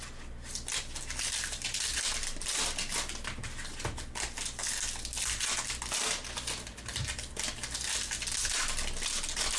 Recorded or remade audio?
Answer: recorded